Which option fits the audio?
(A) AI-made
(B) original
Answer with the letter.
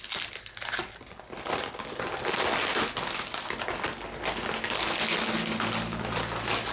B